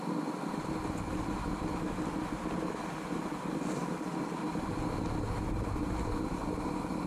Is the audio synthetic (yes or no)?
no